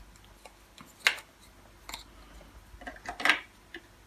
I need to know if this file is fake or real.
real